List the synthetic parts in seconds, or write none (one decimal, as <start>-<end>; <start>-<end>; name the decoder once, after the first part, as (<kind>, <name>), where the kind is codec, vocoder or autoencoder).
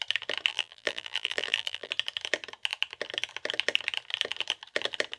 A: 0.5-1.9 (vocoder, BigVGAN v2)